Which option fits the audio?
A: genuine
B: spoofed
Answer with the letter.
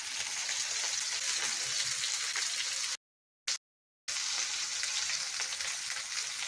A